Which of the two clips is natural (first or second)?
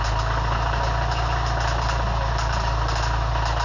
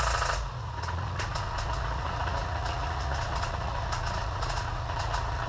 first